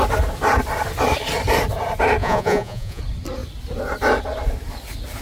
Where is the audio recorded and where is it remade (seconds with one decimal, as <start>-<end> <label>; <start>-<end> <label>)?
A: 0.0-2.2 recorded; 2.2-3.0 remade; 3.0-5.2 recorded